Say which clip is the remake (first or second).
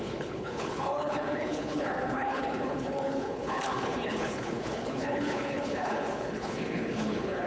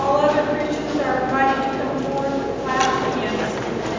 first